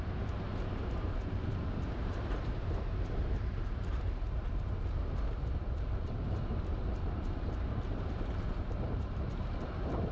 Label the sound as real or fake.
fake